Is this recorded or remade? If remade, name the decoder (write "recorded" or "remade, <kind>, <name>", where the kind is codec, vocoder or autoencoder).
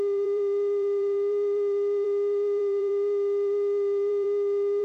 remade, vocoder, BigVGAN v2